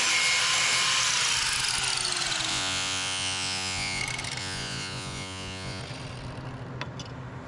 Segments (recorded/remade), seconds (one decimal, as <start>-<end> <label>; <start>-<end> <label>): 0.0-2.5 recorded; 2.5-4.0 remade; 4.0-4.4 recorded; 4.4-5.8 remade; 5.8-7.5 recorded